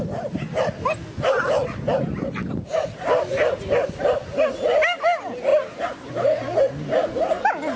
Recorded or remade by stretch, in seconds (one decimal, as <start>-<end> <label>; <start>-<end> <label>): 0.0-5.5 recorded; 5.5-6.5 remade; 6.5-7.8 recorded